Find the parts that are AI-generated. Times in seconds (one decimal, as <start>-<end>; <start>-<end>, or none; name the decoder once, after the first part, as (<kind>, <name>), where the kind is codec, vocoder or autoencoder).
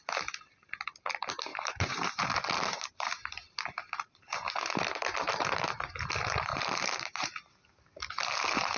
1.5-6.1 (vocoder, BigVGAN v2); 6.5-7.3